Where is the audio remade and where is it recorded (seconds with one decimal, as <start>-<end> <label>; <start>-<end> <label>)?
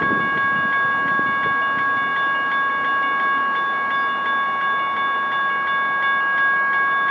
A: 0.0-7.1 recorded